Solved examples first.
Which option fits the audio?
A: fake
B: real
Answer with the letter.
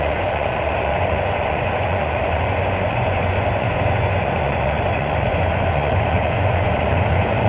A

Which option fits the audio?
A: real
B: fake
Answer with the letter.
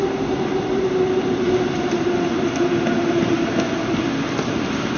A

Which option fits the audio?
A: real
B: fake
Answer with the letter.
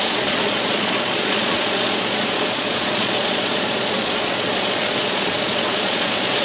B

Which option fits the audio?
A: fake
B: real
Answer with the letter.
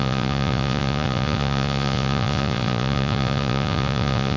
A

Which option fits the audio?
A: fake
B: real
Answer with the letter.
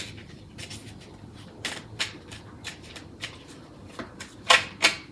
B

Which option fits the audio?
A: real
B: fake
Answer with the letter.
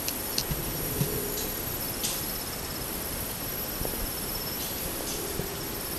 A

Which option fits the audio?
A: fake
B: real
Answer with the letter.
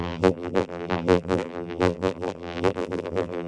A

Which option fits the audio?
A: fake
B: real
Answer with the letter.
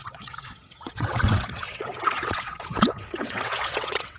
A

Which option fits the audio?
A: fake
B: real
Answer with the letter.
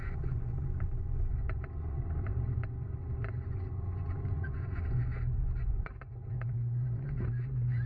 A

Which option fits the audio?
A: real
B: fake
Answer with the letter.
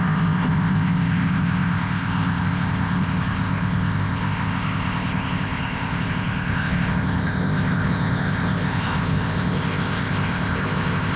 B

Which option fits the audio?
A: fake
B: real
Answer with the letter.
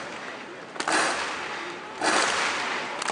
B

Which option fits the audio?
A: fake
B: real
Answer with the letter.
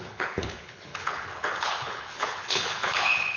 A